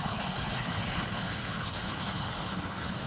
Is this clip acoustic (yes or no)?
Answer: no